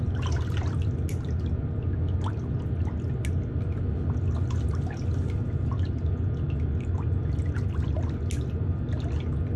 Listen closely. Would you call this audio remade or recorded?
recorded